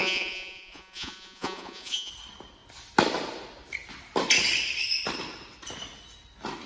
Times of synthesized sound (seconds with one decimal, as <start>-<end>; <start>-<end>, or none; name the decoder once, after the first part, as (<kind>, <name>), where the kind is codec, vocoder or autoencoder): 0.0-2.1 (vocoder, Vocos)